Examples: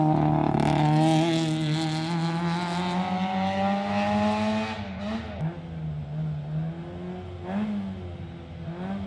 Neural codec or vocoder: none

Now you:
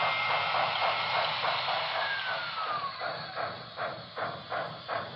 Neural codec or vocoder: none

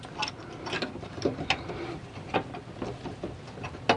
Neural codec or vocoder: none